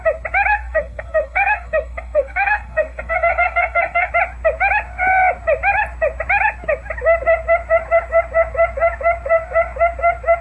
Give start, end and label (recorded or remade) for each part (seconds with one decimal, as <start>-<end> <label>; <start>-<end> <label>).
0.0-0.5 recorded; 0.5-4.1 remade; 4.1-10.4 recorded